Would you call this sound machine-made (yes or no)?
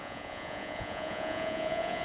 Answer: yes